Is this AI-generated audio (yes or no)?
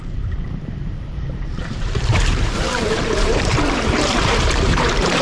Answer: yes